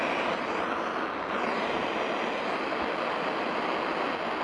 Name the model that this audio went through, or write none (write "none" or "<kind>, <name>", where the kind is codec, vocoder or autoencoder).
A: none